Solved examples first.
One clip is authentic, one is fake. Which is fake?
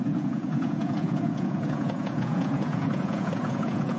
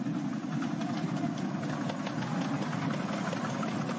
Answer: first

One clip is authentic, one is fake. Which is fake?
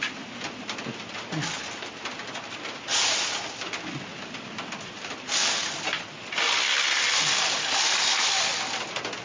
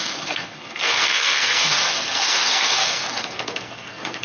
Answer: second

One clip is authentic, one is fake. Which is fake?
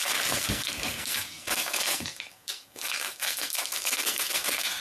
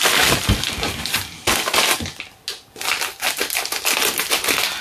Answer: first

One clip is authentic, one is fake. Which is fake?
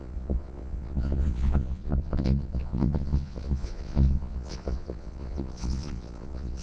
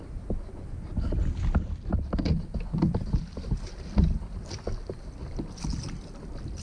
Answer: first